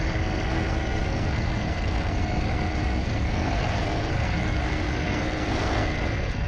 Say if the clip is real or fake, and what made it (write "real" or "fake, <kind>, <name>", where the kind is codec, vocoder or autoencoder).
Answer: fake, codec, SNAC